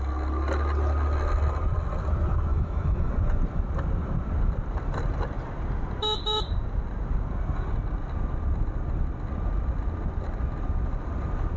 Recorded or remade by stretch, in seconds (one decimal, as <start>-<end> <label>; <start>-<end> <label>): 0.0-2.5 recorded; 2.5-3.1 remade; 3.1-11.6 recorded